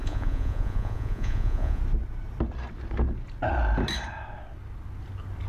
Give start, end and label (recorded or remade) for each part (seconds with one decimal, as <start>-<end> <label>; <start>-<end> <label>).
0.0-1.8 remade; 1.8-5.5 recorded